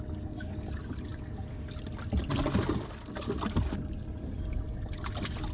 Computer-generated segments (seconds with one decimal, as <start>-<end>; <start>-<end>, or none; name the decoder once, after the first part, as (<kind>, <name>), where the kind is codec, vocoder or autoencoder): none